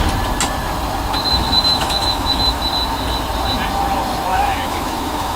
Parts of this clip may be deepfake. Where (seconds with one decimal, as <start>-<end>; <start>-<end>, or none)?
1.3-2.6; 4.3-5.4